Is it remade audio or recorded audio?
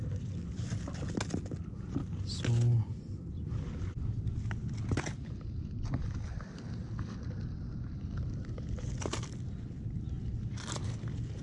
recorded